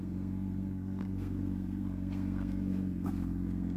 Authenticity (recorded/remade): remade